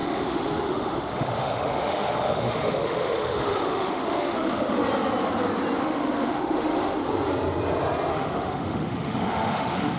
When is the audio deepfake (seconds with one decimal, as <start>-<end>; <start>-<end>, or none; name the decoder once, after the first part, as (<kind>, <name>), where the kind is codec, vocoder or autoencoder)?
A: 0.0-4.8 (autoencoder, DAC-VAE); 5.8-7.0; 8.1-10.0